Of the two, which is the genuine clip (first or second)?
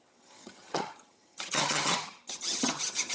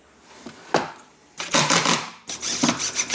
second